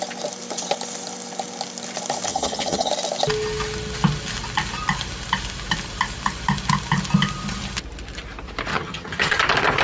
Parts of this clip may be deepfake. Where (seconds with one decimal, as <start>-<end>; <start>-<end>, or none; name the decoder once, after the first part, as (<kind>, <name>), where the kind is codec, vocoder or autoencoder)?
2.3-2.9 (vocoder, HiFi-GAN); 8.7-9.4